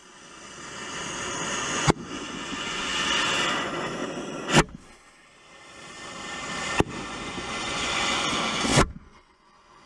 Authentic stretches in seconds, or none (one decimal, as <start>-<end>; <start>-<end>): 0.0-1.6; 2.9-3.6; 4.0-6.9